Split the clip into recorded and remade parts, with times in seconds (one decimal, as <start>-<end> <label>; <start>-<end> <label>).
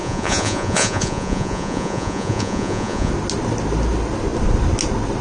0.0-3.1 remade; 3.1-5.2 recorded